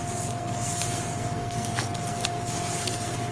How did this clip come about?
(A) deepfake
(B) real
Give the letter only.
A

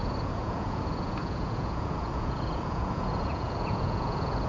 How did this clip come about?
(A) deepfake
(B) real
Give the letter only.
A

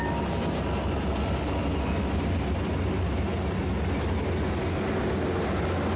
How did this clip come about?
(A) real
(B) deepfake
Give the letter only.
A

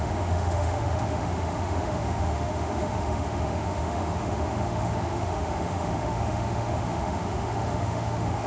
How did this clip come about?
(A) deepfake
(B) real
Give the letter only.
A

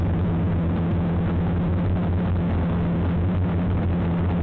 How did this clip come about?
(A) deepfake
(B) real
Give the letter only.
B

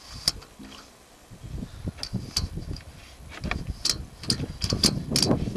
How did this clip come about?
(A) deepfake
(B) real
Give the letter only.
B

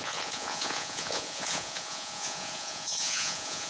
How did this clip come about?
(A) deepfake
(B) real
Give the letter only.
A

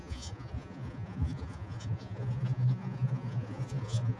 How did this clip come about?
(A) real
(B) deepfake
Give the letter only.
B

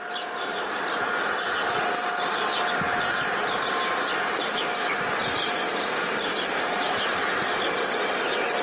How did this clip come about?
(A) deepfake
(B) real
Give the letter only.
B